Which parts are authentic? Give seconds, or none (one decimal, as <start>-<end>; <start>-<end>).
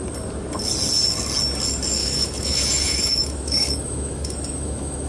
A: 0.0-2.0